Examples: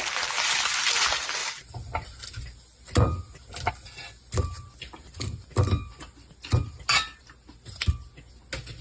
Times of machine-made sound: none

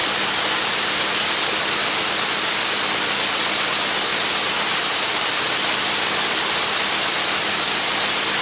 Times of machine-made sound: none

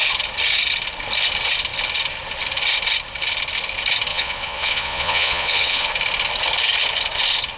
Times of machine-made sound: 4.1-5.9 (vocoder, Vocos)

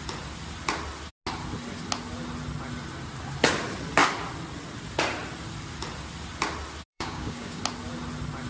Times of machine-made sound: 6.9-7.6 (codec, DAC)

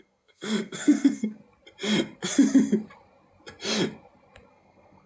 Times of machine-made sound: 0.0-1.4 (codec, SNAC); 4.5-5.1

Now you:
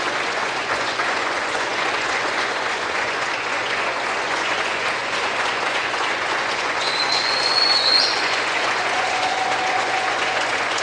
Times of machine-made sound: 0.0-10.8 (vocoder, Vocos)

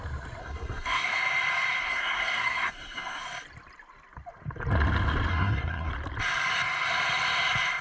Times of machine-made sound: 0.4-1.2 (codec, SNAC); 1.8-3.2; 5.3-5.9